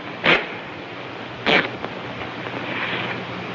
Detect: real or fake real